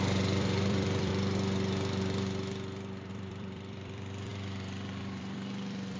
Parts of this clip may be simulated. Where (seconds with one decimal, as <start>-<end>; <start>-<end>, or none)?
0.0-1.1; 3.1-6.0

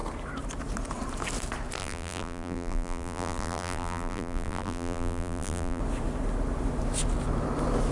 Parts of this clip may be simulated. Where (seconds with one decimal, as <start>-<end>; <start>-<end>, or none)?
1.8-5.8

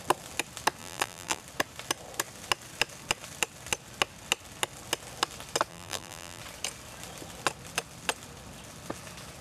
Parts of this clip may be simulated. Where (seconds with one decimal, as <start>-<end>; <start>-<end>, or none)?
0.8-1.4; 5.7-6.4

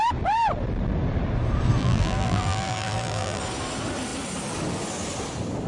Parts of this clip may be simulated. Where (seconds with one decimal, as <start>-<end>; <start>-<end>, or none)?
1.8-3.4

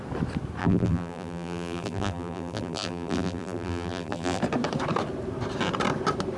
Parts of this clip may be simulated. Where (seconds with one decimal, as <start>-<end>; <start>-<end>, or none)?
0.6-4.4

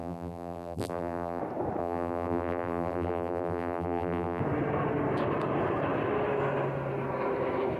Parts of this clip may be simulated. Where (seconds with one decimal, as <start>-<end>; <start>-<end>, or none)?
0.0-1.4; 1.8-4.4

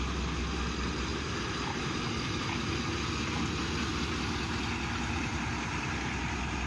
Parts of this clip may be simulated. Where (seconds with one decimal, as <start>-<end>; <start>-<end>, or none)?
1.1-2.5

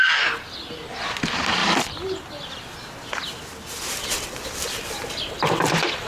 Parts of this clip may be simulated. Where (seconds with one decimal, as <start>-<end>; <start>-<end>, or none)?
none